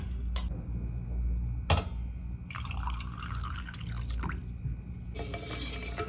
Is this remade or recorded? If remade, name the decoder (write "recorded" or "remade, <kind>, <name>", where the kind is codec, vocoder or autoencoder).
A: recorded